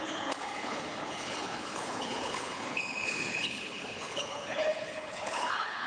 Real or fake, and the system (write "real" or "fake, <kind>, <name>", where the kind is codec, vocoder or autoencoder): fake, codec, HILCodec